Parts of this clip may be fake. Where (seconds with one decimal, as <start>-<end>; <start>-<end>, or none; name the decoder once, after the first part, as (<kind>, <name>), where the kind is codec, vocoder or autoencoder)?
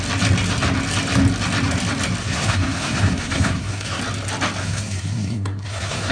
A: 2.2-4.0 (codec, SNAC); 4.6-6.1